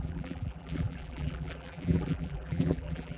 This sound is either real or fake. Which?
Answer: fake